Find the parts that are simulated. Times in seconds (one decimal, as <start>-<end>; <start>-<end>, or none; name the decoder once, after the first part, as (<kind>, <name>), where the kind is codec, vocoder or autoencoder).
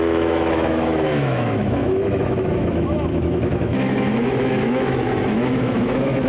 0.0-6.3 (autoencoder, DAC-VAE)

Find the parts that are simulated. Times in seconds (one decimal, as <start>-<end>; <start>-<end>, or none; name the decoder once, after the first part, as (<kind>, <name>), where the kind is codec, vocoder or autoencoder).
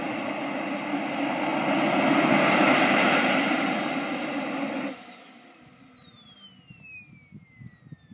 none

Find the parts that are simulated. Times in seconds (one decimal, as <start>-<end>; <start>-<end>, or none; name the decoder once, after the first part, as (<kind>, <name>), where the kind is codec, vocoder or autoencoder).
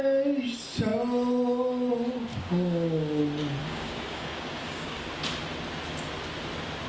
2.3-3.2 (codec, DAC); 3.6-5.1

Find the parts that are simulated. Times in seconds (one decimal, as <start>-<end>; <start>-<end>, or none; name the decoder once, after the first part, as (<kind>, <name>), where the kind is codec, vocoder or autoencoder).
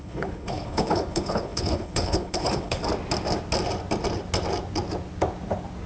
0.0-2.8 (codec, HILCodec)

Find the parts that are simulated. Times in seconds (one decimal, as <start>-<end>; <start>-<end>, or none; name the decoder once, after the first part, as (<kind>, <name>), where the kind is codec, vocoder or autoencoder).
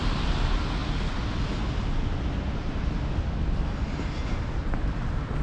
none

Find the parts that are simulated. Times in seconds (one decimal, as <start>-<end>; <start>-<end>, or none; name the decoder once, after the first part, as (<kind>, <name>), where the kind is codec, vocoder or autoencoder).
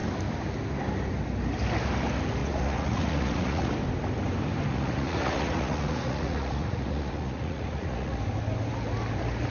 2.4-3.7 (vocoder, Vocos); 4.7-8.2